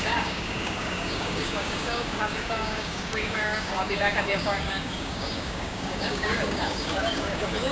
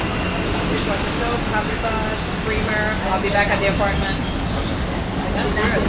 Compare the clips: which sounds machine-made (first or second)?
first